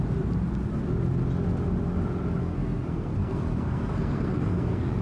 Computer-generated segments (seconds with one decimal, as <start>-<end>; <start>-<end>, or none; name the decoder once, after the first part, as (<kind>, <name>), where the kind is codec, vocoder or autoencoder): 2.4-5.0 (codec, SNAC)